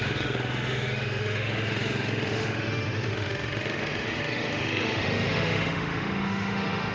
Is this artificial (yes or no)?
yes